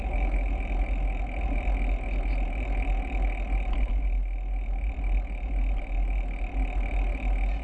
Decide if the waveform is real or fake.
real